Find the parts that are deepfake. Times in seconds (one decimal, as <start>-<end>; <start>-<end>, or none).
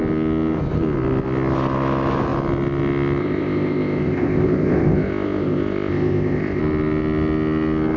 3.2-6.6